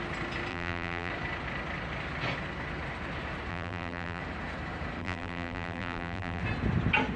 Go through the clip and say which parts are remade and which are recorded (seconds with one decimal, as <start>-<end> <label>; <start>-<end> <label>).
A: 0.0-0.5 recorded; 0.5-1.1 remade; 1.1-3.5 recorded; 3.5-4.2 remade; 4.2-5.0 recorded; 5.0-6.4 remade; 6.4-7.2 recorded